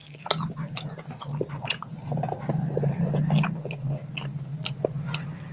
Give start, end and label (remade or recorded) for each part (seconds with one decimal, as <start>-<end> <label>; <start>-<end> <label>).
0.0-3.3 remade; 3.3-5.5 recorded